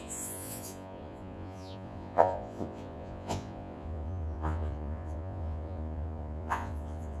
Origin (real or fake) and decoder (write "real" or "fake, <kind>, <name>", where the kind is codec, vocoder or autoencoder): fake, vocoder, Vocos